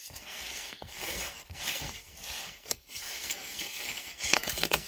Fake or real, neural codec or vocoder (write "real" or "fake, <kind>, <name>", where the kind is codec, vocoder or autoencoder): fake, codec, SNAC